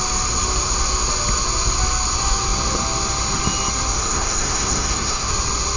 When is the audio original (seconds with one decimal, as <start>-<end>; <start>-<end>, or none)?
0.0-4.0; 5.3-5.8